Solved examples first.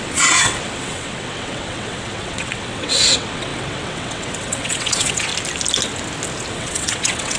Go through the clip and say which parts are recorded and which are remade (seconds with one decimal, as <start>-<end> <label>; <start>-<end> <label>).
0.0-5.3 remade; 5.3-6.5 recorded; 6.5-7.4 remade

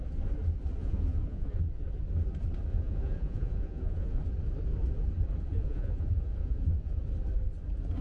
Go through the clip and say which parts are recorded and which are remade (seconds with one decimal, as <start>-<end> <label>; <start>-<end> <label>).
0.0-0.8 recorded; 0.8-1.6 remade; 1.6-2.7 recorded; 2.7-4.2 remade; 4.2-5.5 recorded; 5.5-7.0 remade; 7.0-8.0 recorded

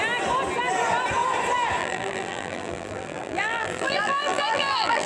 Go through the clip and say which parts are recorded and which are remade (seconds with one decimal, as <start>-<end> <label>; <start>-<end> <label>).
0.0-1.8 recorded; 1.8-5.1 remade

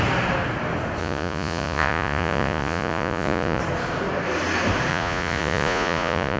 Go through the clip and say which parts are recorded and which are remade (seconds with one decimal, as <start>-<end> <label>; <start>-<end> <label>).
0.0-1.0 recorded; 1.0-3.6 remade; 3.6-4.9 recorded; 4.9-6.4 remade

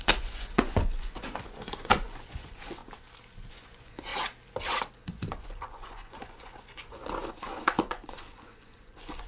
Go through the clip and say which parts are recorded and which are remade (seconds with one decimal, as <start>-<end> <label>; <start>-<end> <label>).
0.0-2.8 remade; 2.8-3.5 recorded; 3.5-4.1 remade; 4.1-4.9 recorded; 4.9-9.3 remade

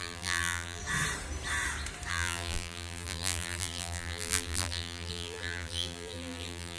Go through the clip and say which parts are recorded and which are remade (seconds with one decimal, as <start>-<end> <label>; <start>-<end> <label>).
0.0-0.8 remade; 0.8-2.1 recorded; 2.1-6.8 remade

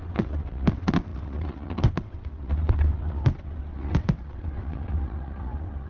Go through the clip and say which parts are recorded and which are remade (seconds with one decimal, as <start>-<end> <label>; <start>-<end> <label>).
0.0-5.9 remade

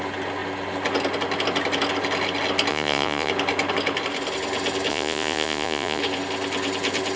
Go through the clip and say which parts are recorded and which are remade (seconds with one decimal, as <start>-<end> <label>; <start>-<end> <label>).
0.0-2.7 recorded; 2.7-3.3 remade; 3.3-4.9 recorded; 4.9-6.0 remade; 6.0-7.2 recorded